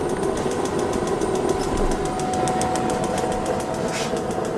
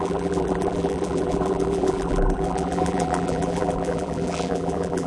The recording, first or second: first